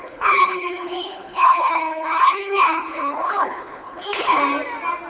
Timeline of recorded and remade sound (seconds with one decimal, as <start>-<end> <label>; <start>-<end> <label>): 0.0-4.4 remade; 4.4-5.1 recorded